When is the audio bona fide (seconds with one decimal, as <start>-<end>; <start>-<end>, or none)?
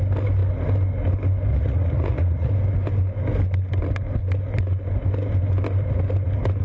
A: 0.0-1.5; 2.5-6.6